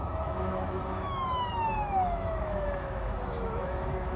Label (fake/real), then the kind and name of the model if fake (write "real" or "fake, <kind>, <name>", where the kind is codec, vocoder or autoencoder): fake, autoencoder, DAC-VAE